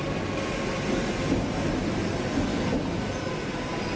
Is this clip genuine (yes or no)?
yes